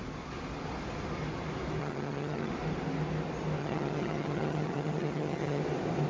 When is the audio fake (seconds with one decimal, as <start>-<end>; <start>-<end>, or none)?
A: 1.8-2.5; 3.6-5.6